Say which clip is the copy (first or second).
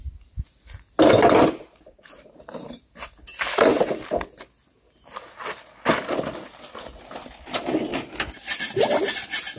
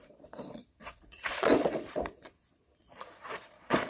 second